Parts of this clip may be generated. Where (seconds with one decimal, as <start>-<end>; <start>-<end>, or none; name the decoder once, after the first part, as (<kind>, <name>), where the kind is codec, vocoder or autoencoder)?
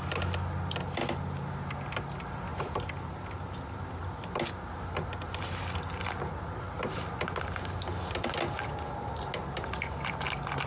none